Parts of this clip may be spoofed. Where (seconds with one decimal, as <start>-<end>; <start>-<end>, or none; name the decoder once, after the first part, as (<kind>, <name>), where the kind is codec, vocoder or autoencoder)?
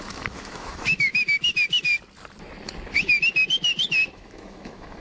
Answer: 0.0-1.1 (autoencoder, DAC-VAE); 4.1-5.0